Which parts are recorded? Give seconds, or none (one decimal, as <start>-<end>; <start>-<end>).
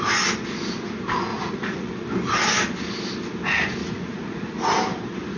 0.0-1.3; 1.9-3.8; 4.5-5.4